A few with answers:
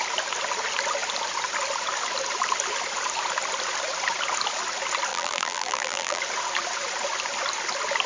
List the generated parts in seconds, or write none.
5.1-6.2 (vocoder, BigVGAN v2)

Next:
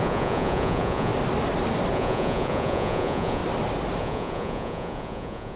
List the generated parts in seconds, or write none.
0.0-1.1 (vocoder, Vocos); 1.9-3.4; 4.0-5.6

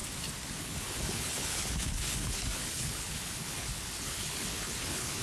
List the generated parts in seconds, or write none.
0.6-5.2 (codec, HILCodec)